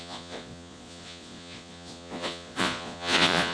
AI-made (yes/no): yes